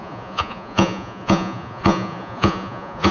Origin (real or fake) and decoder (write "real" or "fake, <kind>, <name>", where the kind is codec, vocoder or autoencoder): fake, vocoder, Vocos